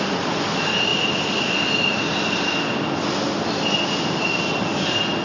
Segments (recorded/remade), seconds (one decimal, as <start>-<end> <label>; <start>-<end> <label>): 0.0-5.2 recorded